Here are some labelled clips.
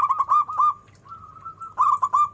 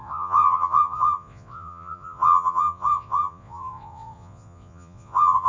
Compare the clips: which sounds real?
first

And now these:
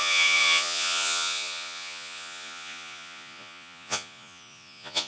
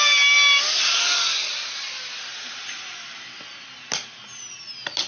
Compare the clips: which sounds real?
second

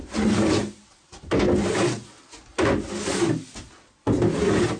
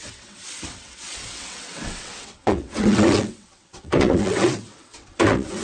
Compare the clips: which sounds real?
first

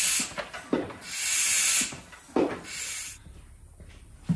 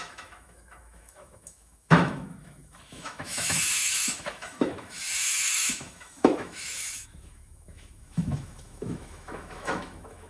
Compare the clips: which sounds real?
first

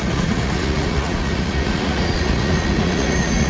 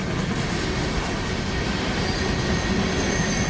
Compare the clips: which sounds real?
second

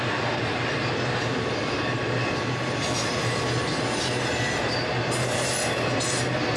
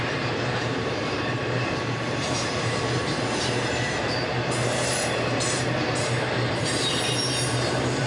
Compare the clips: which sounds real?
first